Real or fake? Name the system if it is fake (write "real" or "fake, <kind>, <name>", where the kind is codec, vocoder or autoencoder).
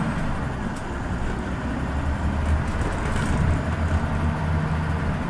real